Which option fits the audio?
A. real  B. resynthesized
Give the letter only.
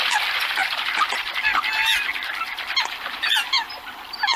A